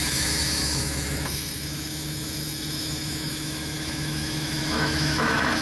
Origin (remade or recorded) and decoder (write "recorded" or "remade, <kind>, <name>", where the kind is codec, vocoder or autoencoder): remade, autoencoder, DAC-VAE